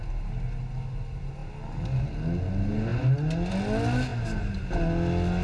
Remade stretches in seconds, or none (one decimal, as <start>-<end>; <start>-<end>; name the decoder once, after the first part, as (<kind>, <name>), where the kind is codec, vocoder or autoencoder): none